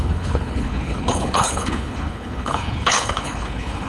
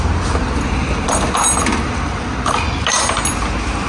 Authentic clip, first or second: second